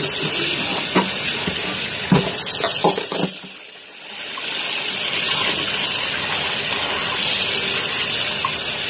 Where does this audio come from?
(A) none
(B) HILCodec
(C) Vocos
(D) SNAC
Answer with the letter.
A